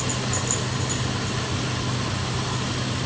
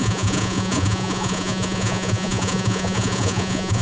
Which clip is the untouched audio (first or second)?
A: first